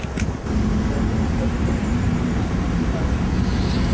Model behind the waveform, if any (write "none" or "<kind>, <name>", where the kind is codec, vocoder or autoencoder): none